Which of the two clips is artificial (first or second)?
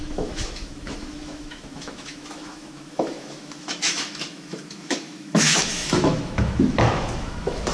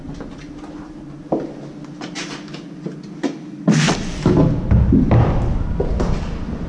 first